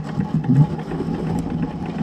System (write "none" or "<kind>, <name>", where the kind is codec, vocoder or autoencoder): none